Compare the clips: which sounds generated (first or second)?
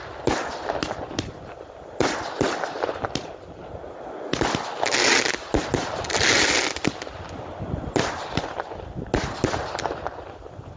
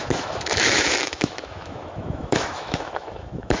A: second